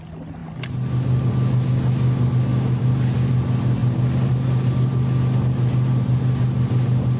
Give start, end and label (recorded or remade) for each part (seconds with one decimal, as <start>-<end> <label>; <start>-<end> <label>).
0.0-7.2 recorded